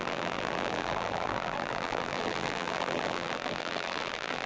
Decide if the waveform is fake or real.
fake